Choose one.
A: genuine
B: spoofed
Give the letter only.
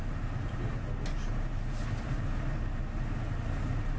A